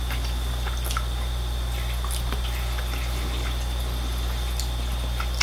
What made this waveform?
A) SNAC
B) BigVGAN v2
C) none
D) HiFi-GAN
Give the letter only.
C